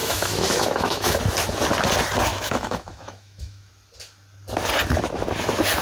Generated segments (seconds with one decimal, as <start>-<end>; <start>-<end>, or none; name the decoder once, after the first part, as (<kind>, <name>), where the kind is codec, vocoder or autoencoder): 0.0-1.2 (autoencoder, DAC-VAE); 2.3-3.7